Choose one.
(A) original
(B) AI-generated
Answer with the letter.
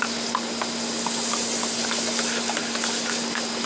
A